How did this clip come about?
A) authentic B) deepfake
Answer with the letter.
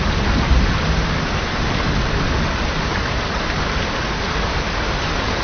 A